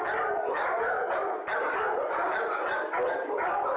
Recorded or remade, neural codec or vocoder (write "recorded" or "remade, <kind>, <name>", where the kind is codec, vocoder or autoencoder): recorded